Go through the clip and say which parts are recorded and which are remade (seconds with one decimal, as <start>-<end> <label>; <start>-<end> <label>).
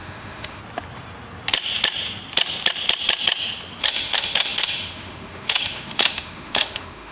0.0-0.6 remade; 0.6-3.8 recorded; 3.8-7.1 remade